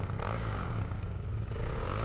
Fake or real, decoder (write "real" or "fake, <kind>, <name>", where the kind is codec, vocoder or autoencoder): fake, codec, DAC